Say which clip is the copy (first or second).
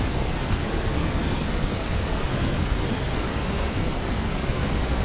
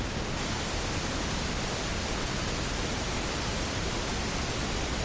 first